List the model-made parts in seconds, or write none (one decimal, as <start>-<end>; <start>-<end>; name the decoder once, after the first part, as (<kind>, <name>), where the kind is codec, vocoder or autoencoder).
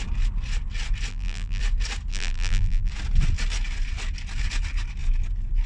1.1-1.6 (vocoder, BigVGAN v2); 2.1-2.9